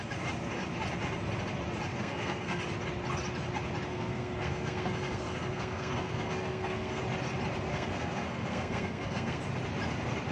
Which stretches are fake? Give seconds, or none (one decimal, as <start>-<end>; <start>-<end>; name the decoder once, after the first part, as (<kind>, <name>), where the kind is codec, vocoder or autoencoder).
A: 1.9-2.6 (codec, SNAC); 3.9-7.0; 7.7-9.4